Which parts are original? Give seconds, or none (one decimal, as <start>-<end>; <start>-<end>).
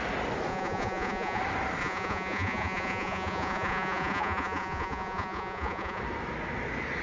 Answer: 0.0-0.5; 1.4-1.8; 6.0-7.0